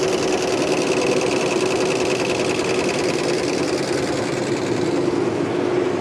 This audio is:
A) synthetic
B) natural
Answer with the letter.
B